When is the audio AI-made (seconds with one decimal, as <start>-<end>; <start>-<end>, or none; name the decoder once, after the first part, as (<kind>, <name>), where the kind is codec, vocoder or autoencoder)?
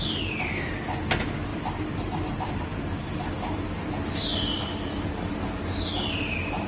1.5-3.3 (vocoder, BigVGAN v2); 4.3-5.3